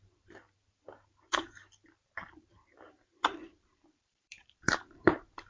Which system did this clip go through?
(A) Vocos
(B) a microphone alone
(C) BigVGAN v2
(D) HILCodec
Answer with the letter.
C